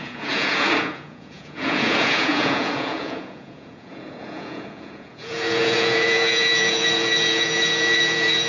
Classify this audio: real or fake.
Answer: fake